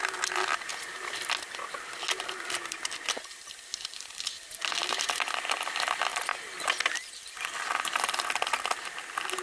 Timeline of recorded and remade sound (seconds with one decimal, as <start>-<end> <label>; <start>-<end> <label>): 0.0-9.4 recorded